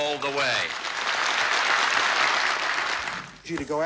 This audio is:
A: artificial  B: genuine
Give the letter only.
B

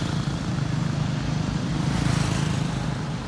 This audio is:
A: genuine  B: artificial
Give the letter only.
B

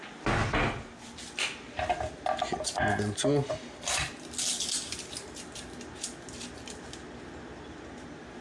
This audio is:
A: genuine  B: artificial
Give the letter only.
A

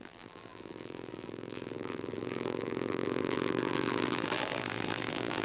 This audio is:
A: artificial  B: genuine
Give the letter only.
A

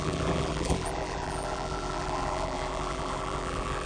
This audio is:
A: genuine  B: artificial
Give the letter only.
B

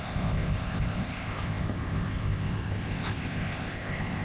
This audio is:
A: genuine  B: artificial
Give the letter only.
B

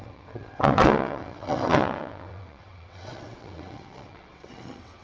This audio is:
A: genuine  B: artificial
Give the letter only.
B